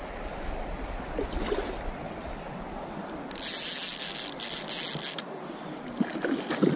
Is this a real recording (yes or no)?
yes